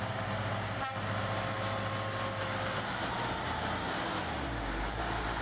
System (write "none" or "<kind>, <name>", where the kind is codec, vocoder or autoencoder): none